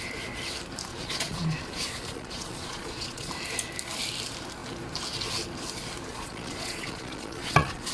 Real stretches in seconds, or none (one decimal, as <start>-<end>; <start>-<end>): 0.0-0.9; 3.3-6.1